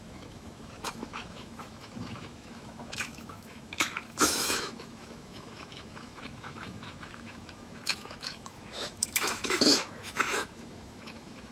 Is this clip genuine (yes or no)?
no